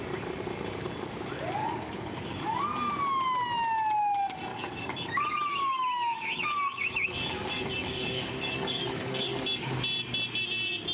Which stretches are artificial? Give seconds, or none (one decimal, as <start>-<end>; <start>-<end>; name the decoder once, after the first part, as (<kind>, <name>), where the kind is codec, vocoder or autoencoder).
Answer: 1.6-2.6 (codec, DAC); 4.5-9.8